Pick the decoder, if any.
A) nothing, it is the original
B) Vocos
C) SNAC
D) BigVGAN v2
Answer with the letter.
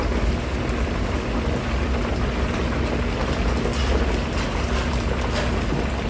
A